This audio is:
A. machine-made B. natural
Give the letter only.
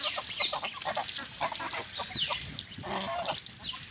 B